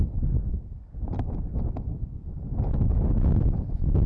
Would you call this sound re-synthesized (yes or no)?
no